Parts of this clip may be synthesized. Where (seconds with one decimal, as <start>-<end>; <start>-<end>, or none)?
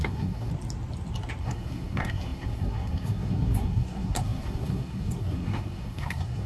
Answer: 0.0-0.5; 1.4-6.5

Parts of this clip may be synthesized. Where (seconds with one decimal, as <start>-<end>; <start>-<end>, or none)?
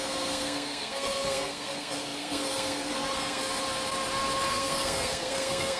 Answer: 0.0-3.4; 4.5-5.8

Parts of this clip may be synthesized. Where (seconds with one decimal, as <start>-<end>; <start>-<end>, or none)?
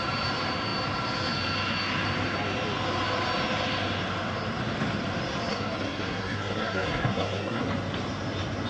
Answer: 5.5-7.6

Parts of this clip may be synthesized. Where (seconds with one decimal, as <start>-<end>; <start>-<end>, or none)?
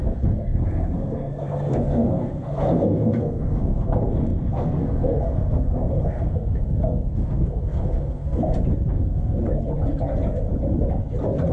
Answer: 0.0-8.4; 8.9-9.4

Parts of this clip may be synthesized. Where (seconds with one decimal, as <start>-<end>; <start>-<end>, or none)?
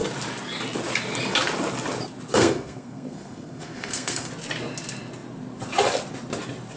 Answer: 2.3-4.3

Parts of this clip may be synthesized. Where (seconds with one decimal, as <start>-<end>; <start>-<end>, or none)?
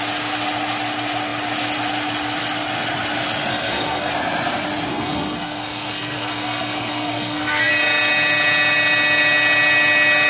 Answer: 3.5-4.1; 4.9-7.7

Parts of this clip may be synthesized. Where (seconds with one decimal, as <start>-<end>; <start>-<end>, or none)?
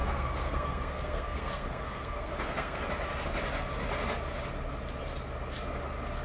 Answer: 0.0-2.8